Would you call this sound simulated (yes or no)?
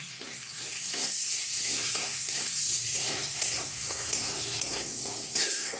yes